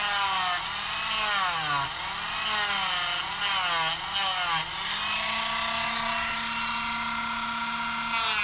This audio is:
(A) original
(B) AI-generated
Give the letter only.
A